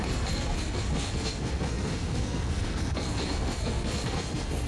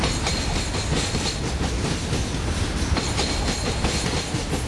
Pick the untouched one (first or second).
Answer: second